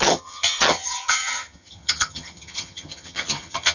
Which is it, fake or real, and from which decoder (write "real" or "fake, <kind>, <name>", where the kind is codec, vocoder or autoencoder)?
fake, vocoder, HiFi-GAN